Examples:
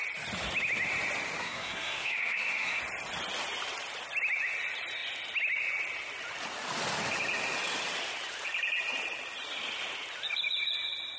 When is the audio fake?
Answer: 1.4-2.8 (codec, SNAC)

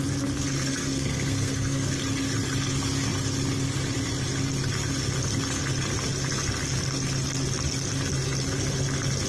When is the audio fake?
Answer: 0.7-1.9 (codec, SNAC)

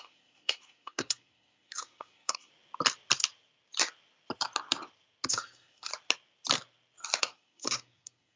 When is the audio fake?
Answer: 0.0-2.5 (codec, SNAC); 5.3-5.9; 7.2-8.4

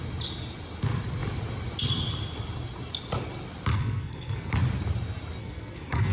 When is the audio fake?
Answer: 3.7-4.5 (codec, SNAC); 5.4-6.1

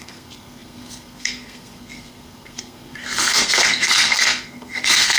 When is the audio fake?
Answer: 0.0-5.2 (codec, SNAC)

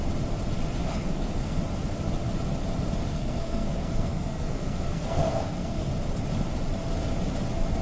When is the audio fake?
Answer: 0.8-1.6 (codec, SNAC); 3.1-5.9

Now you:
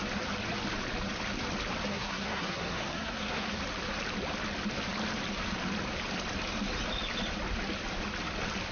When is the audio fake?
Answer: 1.9-3.6 (codec, SNAC)